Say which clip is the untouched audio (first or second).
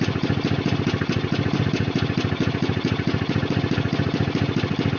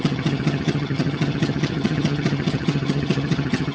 first